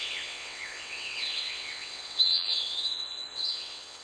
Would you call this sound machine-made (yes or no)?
yes